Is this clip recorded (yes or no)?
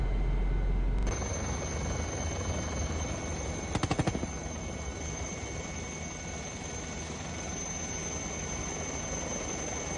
yes